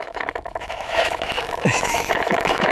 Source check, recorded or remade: remade